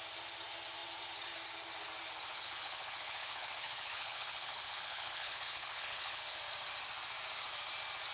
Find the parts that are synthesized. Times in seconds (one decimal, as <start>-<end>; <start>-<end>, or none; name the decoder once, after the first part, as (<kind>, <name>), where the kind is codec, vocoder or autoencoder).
2.3-6.4 (codec, HILCodec)